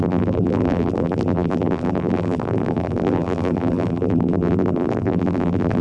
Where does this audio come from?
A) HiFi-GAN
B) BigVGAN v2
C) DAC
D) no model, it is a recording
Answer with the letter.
B